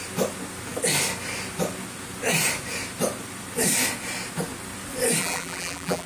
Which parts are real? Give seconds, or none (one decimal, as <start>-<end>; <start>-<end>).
0.0-5.2